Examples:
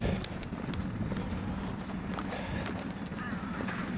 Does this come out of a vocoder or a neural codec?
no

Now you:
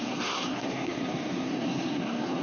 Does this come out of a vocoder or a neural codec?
yes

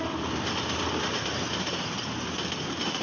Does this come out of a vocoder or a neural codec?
no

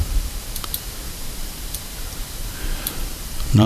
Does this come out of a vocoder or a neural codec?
yes